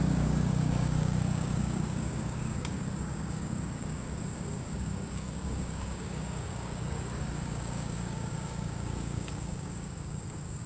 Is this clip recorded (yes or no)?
no